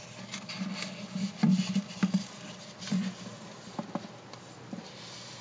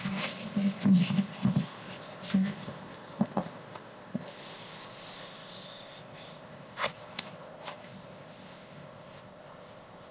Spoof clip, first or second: second